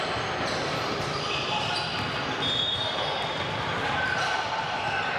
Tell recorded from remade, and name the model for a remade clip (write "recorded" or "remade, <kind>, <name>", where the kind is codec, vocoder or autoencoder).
recorded